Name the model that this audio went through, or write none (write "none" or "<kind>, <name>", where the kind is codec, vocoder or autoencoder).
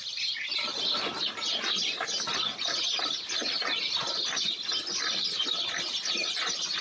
none